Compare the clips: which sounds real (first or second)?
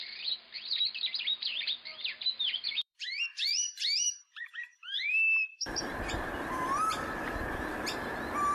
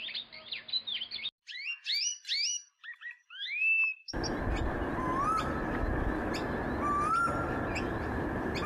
second